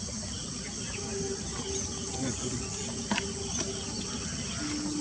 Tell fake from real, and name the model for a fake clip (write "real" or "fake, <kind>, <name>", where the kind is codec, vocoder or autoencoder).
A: real